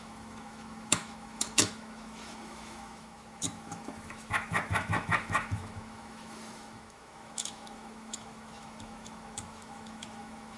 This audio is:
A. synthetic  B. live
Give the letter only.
A